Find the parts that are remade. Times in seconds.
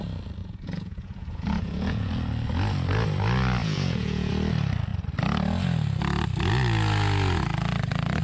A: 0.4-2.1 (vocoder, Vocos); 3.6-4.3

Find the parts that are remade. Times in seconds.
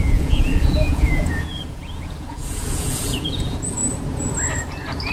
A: 0.0-3.8 (vocoder, Vocos)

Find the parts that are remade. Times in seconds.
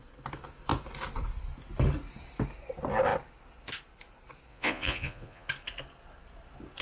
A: 4.5-5.5 (vocoder, Vocos)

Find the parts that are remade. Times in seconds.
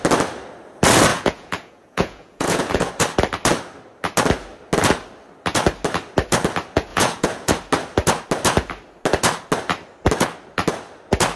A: 1.1-2.9 (vocoder, Vocos); 6.9-7.5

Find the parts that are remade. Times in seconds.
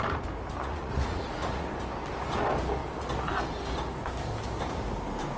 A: 0.6-1.7 (vocoder, Vocos)